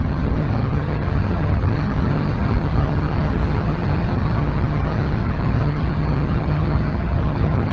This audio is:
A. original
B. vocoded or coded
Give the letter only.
B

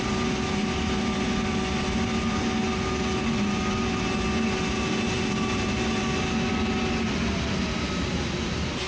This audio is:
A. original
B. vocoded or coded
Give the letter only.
A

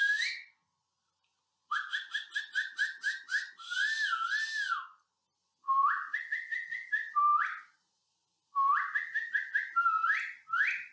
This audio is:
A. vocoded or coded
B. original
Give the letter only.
B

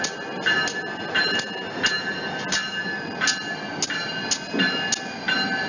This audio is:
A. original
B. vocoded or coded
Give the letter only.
A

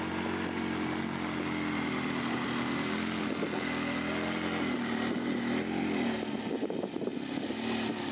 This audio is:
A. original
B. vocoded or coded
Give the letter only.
A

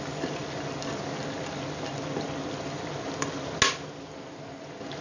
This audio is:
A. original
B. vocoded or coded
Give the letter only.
A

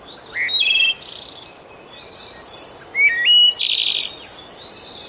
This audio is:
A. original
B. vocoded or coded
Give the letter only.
A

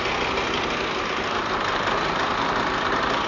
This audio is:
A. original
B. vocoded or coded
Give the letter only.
A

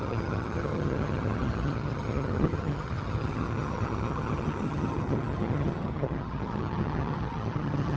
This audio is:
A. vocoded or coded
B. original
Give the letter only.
A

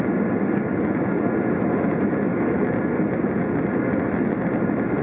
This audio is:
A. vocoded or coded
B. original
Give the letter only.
B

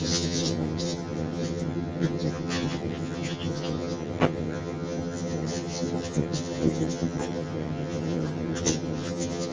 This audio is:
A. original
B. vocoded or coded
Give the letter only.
B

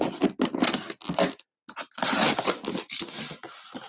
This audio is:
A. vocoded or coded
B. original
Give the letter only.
B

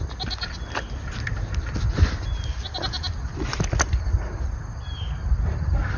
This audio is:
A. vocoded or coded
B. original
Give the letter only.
B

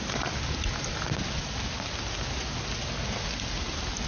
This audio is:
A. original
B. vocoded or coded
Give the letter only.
A